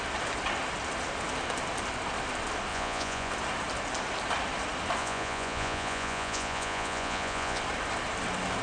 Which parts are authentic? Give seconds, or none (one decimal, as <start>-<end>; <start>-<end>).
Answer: 0.0-2.7; 3.3-5.0; 7.6-8.6